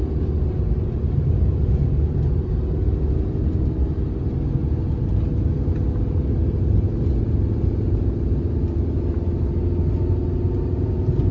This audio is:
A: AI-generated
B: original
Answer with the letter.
B